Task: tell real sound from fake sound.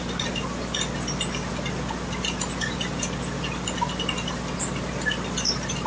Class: real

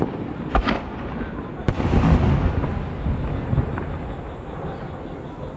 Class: real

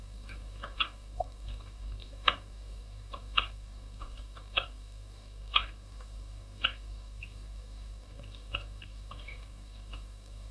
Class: fake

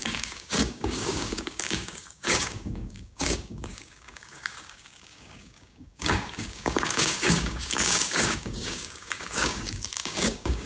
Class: fake